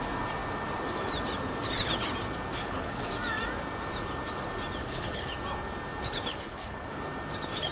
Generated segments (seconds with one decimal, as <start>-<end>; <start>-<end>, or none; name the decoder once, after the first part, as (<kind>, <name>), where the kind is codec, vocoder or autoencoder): 2.5-3.1 (codec, HILCodec); 4.8-5.3; 6.3-7.0